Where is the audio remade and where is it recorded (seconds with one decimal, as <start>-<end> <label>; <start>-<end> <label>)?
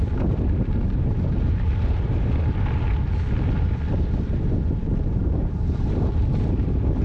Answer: 0.0-2.4 remade; 2.4-4.8 recorded; 4.8-6.1 remade; 6.1-7.0 recorded